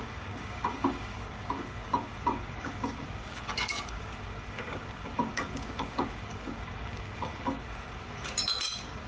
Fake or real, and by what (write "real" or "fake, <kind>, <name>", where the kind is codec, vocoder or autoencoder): fake, codec, DAC